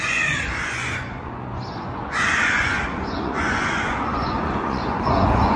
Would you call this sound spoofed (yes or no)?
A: yes